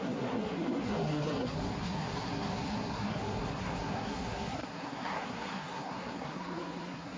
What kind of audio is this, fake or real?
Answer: fake